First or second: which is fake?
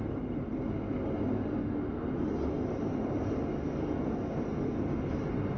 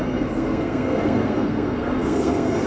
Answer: second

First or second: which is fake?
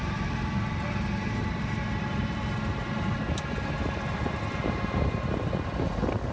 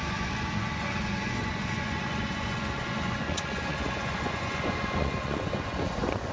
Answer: second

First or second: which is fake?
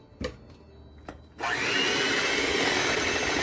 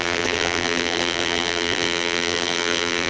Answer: second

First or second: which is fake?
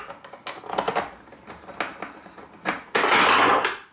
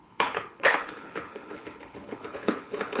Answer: second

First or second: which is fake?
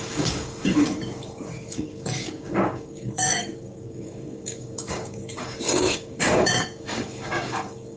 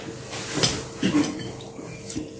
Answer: first